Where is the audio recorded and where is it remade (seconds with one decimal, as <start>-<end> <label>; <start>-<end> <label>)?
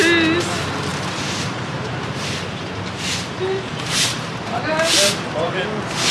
0.0-0.9 recorded; 0.9-4.6 remade; 4.6-6.1 recorded